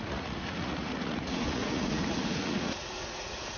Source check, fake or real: fake